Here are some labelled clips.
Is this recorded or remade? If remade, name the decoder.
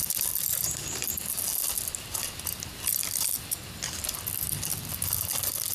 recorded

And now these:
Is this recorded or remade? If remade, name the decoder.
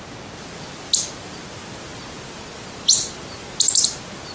recorded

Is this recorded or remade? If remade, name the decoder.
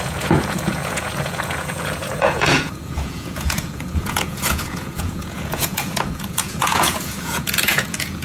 remade, vocoder, Vocos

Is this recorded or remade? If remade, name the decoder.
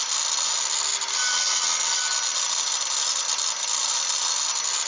recorded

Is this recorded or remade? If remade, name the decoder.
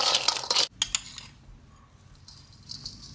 recorded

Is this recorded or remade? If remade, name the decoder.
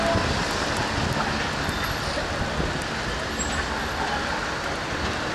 recorded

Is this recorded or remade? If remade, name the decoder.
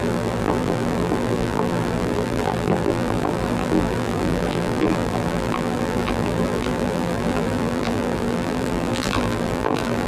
remade, vocoder, BigVGAN v2